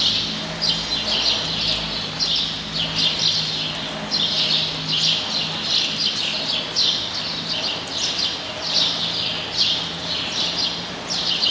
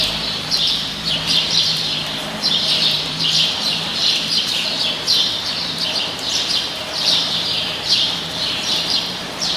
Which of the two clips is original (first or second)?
first